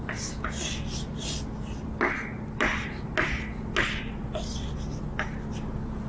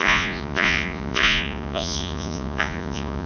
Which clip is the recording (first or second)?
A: first